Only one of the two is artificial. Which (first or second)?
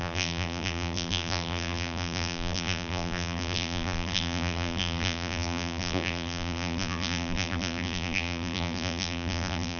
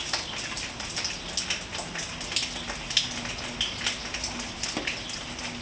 first